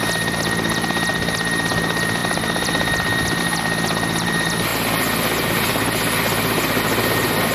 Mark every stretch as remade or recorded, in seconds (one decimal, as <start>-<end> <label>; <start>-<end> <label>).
0.0-1.1 remade; 1.1-1.7 recorded; 1.7-7.5 remade